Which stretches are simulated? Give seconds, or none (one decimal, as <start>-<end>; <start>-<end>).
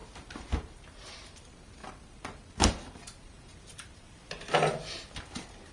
0.0-5.7